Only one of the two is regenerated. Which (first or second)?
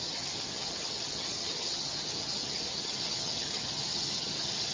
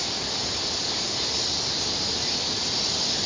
first